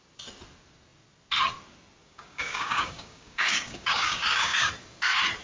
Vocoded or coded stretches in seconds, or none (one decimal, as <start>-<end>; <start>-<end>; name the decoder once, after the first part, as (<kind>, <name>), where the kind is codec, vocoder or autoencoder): 2.0-4.7 (codec, DAC)